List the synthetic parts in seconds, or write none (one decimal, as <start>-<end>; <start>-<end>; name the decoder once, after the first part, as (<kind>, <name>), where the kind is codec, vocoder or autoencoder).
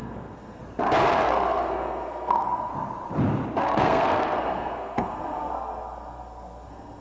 0.0-0.6 (codec, SNAC); 1.1-2.7; 3.6-7.0